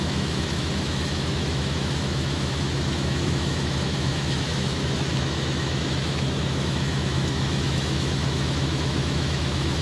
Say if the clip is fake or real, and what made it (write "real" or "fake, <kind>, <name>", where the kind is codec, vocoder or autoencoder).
fake, autoencoder, DAC-VAE